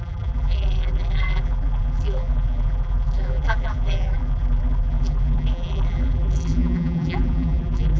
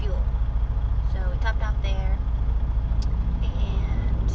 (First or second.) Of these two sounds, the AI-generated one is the first